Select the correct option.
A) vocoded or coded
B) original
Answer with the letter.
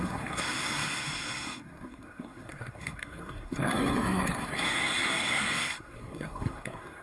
A